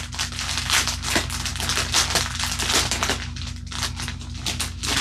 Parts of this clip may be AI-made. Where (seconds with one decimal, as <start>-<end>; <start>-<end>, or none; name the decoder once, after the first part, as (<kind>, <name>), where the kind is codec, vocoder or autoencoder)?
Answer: none